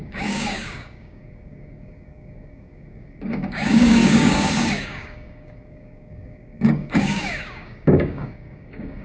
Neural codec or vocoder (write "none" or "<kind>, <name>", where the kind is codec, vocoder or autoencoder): codec, DAC